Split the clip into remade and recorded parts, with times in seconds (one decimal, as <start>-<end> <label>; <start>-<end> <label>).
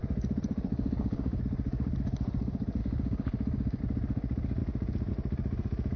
0.0-0.7 recorded; 0.7-1.4 remade; 1.4-2.8 recorded; 2.8-3.8 remade; 3.8-6.0 recorded